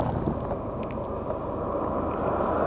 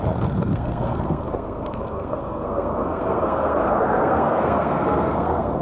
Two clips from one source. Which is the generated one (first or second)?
second